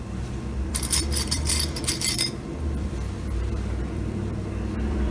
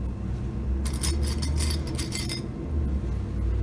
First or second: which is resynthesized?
first